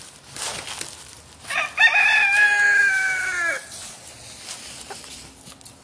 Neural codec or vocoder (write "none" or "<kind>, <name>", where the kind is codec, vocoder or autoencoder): none